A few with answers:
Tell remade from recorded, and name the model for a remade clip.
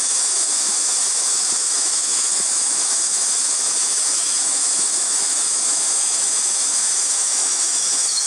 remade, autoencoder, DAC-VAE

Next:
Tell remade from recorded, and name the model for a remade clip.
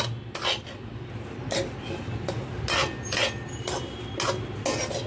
recorded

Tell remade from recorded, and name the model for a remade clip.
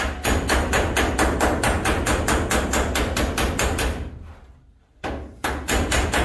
recorded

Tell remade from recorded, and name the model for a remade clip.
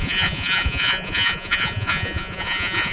remade, vocoder, Vocos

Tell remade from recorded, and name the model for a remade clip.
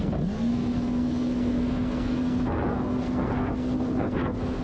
remade, codec, SNAC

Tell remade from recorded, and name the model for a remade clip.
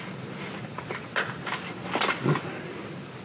recorded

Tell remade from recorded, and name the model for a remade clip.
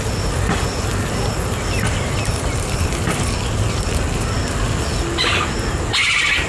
recorded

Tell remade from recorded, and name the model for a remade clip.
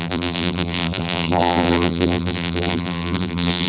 remade, vocoder, BigVGAN v2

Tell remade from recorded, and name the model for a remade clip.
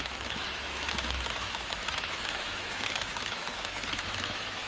remade, autoencoder, DAC-VAE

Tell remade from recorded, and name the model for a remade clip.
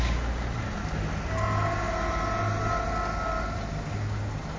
recorded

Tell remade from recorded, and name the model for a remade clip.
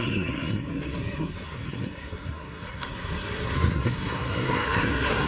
remade, codec, SNAC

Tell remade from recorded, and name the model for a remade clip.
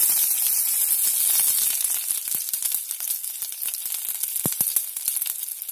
recorded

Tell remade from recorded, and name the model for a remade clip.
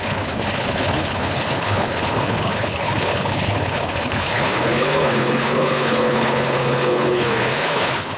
remade, codec, HILCodec